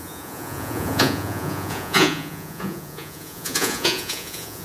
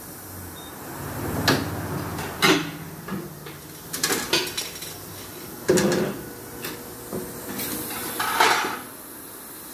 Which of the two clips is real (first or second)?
second